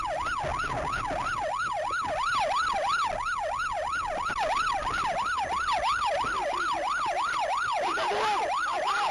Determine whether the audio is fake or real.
real